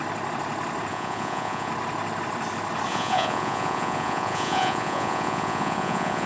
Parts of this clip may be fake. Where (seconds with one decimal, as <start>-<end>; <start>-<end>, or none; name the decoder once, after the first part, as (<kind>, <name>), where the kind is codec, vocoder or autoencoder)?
0.9-1.7 (vocoder, Vocos); 2.9-6.3